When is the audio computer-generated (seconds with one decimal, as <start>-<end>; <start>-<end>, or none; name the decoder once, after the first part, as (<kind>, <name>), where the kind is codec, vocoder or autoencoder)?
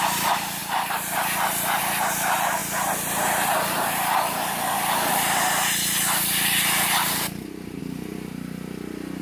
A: 0.0-9.2 (vocoder, BigVGAN v2)